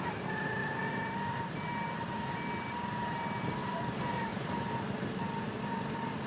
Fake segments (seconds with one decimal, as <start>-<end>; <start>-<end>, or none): 3.6-4.3